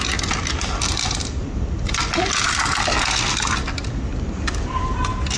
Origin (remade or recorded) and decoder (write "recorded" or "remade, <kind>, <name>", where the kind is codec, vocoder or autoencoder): recorded